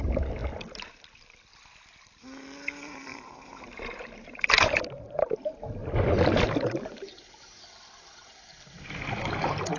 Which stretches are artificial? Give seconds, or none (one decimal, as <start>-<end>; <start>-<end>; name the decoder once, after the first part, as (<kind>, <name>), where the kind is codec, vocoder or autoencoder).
3.1-4.8 (vocoder, BigVGAN v2); 5.8-7.6